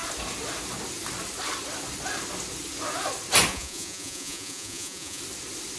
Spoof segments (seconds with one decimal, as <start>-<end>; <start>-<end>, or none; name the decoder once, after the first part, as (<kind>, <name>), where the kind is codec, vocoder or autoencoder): 3.5-5.2 (vocoder, Vocos)